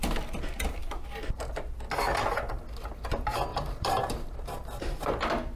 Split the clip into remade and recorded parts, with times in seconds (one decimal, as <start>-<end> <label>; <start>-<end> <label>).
0.0-3.5 recorded; 3.5-5.1 remade; 5.1-5.6 recorded